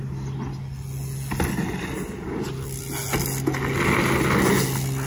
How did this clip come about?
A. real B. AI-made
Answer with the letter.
A